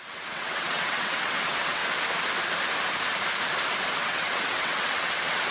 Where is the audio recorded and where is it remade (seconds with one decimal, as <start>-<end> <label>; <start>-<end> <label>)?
0.0-1.8 remade; 1.8-3.9 recorded; 3.9-5.5 remade